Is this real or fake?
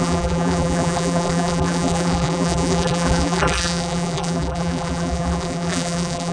fake